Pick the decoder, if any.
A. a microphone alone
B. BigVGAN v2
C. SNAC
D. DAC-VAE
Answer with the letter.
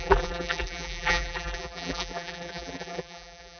B